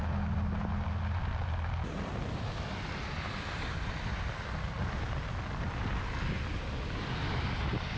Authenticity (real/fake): real